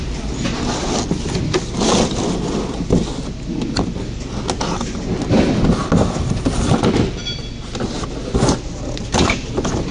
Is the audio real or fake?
real